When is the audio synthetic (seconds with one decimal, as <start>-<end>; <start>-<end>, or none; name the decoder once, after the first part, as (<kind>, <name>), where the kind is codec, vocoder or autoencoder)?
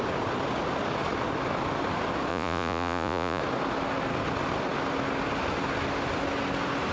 2.3-3.4 (vocoder, Vocos)